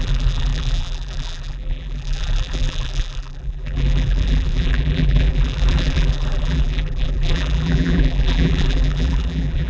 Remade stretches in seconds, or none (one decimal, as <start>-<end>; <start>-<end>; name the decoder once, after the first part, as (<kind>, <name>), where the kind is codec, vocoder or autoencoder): 0.0-9.7 (vocoder, BigVGAN v2)